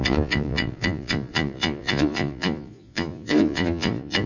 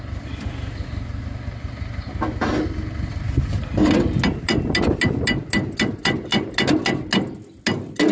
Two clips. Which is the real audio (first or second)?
second